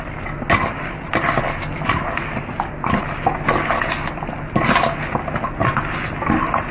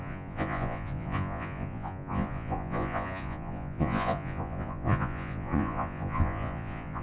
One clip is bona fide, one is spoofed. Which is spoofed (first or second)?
second